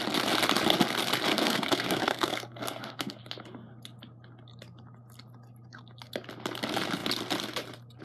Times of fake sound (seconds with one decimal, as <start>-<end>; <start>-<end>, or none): 1.3-3.2